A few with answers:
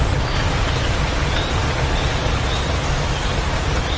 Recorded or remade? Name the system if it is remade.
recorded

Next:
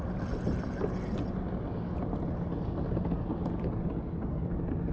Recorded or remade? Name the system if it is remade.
recorded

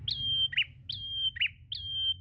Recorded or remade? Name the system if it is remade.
recorded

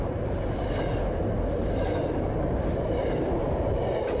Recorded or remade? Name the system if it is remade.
remade, vocoder, BigVGAN v2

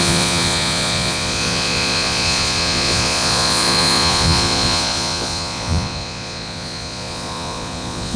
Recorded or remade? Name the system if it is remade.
remade, vocoder, Vocos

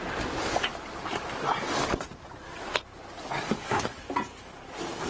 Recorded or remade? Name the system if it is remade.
recorded